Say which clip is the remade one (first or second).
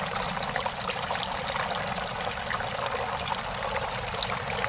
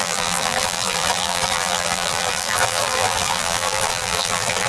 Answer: second